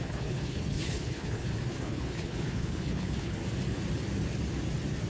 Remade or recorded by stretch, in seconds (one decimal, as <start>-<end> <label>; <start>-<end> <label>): 0.0-3.4 remade; 3.4-5.1 recorded